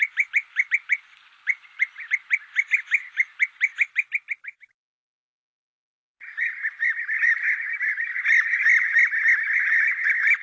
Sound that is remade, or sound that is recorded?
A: recorded